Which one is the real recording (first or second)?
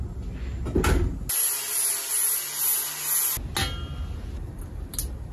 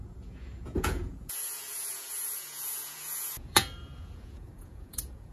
first